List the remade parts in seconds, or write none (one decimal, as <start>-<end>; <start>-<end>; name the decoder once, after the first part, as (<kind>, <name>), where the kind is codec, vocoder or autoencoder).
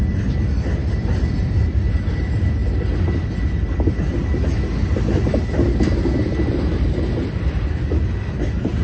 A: none